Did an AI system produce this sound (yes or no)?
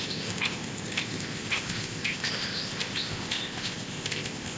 yes